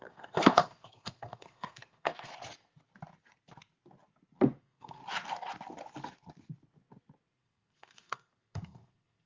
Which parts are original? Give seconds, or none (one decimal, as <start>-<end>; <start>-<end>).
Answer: 2.3-4.6; 5.0-7.4